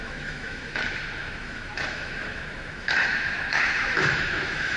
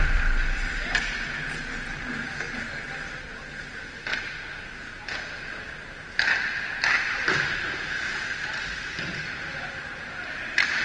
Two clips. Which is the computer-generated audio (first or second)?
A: first